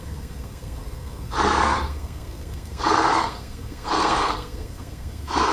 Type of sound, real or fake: fake